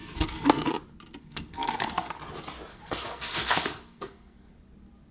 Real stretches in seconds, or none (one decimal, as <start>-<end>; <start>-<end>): 0.7-1.2; 2.1-2.7; 4.5-5.1